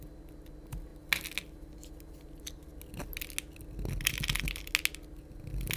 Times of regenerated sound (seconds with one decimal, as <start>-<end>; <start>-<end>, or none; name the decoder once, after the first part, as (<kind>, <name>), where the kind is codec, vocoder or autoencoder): none